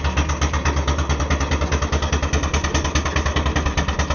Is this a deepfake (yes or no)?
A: no